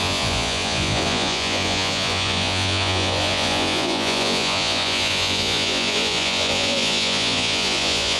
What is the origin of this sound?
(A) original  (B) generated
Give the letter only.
B